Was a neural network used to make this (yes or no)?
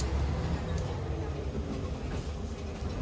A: no